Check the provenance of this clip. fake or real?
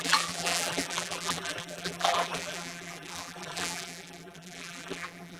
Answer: fake